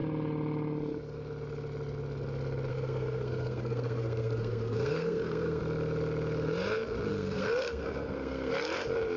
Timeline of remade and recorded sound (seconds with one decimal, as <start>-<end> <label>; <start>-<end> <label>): 0.0-2.7 recorded; 2.7-5.6 remade; 5.6-7.1 recorded; 7.1-8.5 remade; 8.5-9.2 recorded